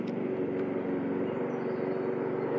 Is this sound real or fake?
real